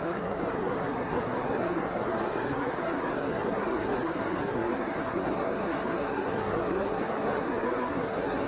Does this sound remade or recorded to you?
remade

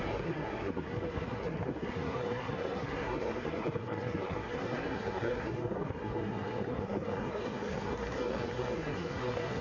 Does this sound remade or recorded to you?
remade